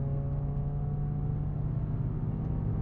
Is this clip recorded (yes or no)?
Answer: yes